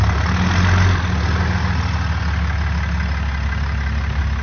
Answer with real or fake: real